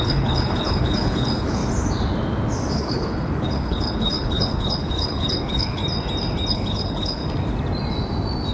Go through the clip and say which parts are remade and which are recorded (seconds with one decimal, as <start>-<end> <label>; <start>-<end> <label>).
0.0-1.6 remade; 1.6-2.7 recorded; 2.7-5.8 remade; 5.8-6.5 recorded; 6.5-7.2 remade; 7.2-8.5 recorded